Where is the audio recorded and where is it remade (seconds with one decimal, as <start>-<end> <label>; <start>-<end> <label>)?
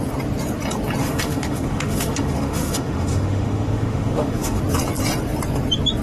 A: 0.0-1.0 recorded; 1.0-4.6 remade; 4.6-6.0 recorded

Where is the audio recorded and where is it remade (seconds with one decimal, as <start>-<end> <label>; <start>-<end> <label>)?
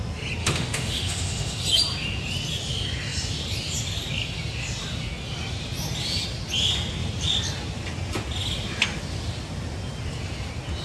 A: 0.0-0.4 recorded; 0.4-1.6 remade; 1.6-10.8 recorded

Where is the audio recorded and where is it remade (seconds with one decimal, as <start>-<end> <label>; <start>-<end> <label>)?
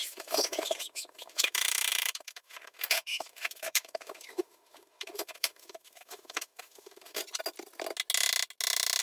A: 0.0-7.2 remade; 7.2-9.0 recorded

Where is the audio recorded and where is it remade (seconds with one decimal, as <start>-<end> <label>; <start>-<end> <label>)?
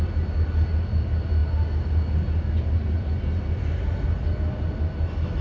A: 0.0-5.4 recorded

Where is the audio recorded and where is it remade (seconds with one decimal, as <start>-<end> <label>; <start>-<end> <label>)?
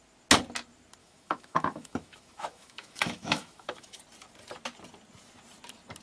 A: 0.0-1.0 recorded; 1.0-4.0 remade; 4.0-6.0 recorded